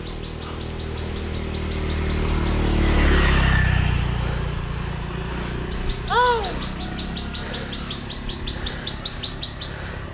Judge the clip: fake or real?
real